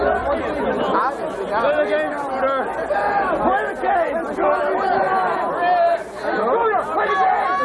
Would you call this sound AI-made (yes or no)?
no